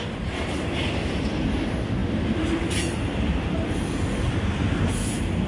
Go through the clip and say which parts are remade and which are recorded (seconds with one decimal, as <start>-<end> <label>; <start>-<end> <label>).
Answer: 0.0-5.5 recorded